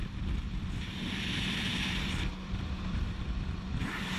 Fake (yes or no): yes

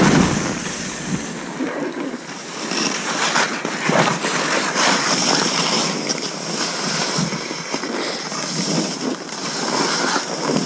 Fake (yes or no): no